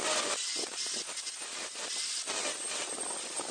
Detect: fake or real real